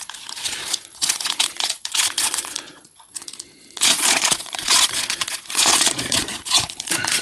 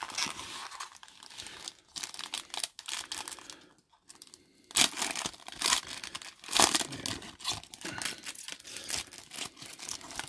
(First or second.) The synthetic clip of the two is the first